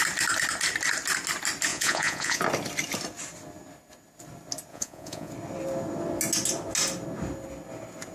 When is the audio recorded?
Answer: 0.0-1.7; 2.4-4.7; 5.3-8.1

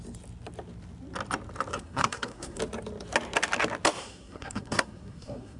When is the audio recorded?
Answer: 0.0-1.7; 2.6-4.0

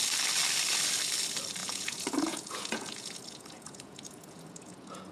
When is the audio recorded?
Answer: 0.0-1.6

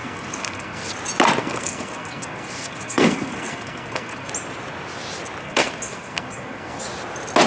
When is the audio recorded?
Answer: 0.9-1.4; 4.3-5.4; 6.8-7.5

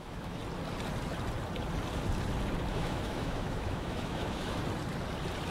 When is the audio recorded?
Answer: 0.4-2.7; 4.6-5.5

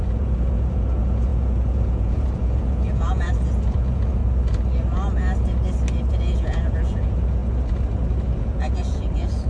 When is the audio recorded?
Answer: 4.2-6.1; 7.4-8.4

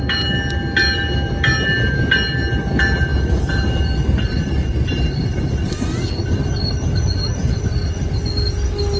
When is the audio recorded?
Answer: 0.0-3.1; 5.7-9.0

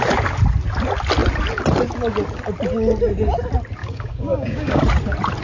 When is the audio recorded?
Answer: 0.0-3.8; 4.8-5.4